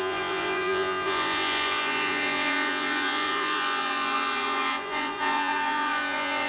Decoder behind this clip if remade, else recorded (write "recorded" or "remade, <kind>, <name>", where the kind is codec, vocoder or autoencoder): remade, vocoder, Vocos